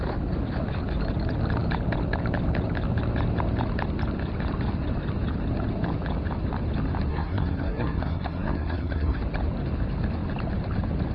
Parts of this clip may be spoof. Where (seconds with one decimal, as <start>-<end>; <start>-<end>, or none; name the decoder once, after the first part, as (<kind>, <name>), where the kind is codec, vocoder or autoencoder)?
7.1-9.2 (codec, SNAC)